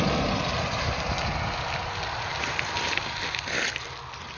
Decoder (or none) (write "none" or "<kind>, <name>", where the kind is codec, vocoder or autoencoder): none